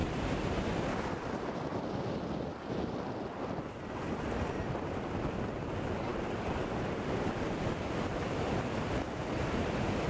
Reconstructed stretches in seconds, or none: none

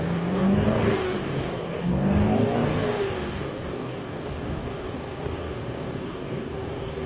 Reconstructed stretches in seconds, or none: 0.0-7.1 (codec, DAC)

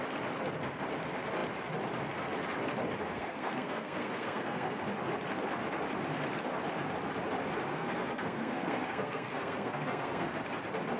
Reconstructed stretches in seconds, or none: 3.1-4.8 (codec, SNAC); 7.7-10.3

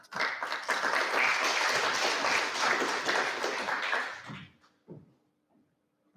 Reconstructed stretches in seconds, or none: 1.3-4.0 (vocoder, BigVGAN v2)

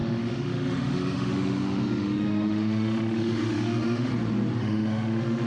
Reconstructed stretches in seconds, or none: 0.0-4.1 (autoencoder, DAC-VAE); 4.6-5.5

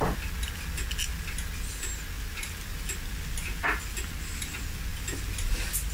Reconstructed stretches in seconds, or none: none